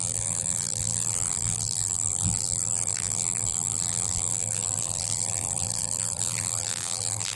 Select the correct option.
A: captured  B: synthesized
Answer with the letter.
B